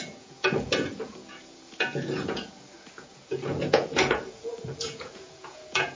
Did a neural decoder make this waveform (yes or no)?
yes